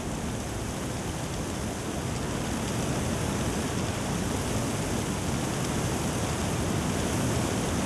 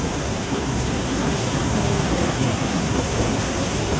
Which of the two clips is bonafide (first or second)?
first